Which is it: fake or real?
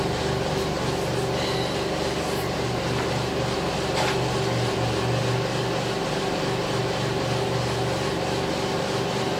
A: real